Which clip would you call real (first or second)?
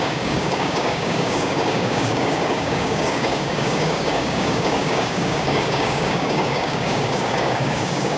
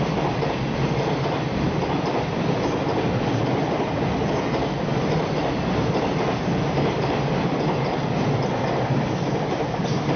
second